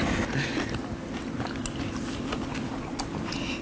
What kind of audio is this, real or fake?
real